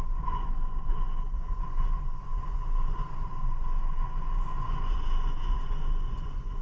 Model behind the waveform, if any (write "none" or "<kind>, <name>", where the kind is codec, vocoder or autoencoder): vocoder, Vocos